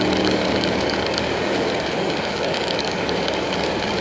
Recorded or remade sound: remade